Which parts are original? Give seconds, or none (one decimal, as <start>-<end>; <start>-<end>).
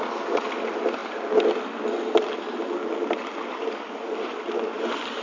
0.0-5.2